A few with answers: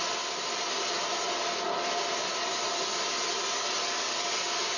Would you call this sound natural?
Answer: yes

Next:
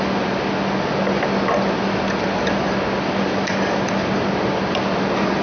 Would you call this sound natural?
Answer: yes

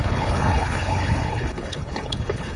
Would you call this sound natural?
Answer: no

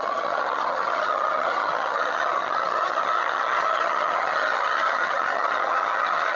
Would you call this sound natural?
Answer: no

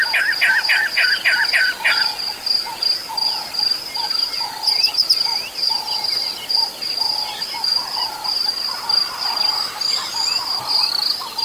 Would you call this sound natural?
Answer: yes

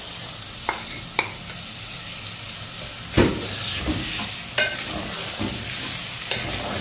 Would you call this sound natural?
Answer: yes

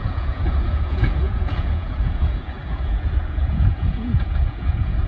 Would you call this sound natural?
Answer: no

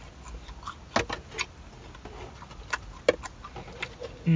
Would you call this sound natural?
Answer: yes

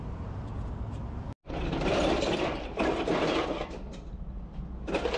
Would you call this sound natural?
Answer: yes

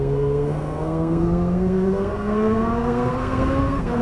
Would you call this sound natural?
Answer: no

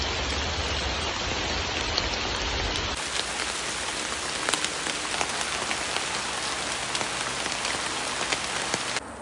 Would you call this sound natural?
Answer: yes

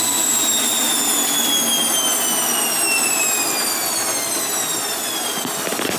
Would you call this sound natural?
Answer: yes